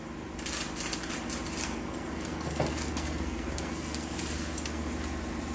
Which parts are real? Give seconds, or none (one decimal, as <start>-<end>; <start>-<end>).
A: 0.0-1.6; 4.9-5.5